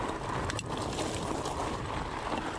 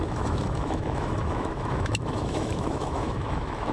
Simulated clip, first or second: second